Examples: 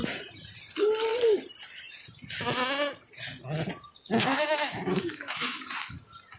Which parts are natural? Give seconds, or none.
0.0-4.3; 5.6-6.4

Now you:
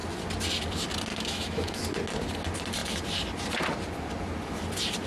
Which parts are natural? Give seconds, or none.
0.0-1.1; 1.8-5.1

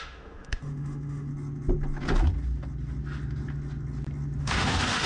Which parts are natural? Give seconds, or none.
1.3-4.4

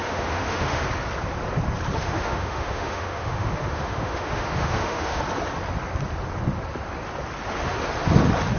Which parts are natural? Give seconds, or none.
0.8-2.0; 5.2-8.6

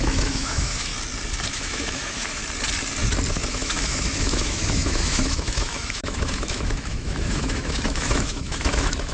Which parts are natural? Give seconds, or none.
0.9-1.5; 2.4-3.3

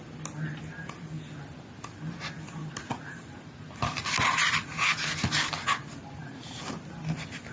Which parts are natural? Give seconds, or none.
0.0-7.5